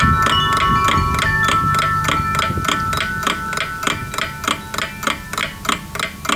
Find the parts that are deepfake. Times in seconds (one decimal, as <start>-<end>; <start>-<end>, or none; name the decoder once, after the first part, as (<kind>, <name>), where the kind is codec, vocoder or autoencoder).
none